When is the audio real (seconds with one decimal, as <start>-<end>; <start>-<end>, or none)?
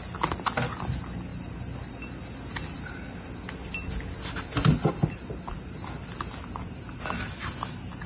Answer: 0.0-8.1